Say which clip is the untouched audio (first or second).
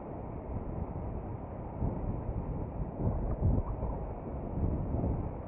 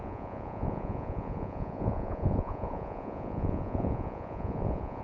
first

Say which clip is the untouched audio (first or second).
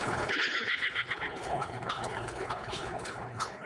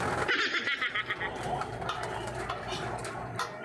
second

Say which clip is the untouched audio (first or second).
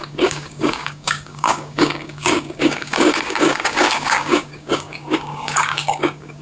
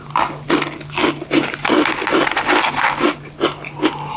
second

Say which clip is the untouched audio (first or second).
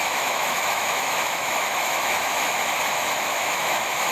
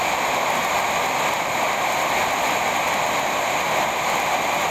second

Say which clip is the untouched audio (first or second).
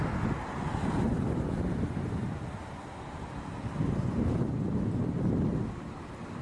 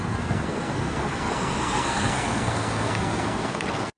first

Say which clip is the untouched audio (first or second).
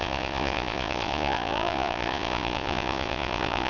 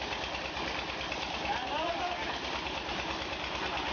second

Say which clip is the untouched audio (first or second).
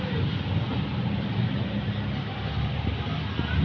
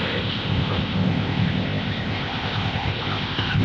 first